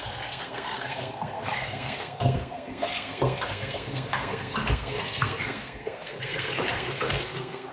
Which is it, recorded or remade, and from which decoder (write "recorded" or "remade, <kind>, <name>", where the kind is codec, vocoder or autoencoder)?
remade, codec, SNAC